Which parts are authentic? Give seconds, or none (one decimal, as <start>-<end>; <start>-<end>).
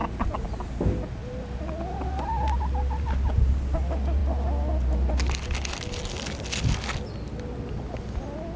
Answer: 0.0-1.2; 2.6-8.6